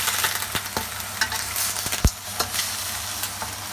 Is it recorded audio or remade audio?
recorded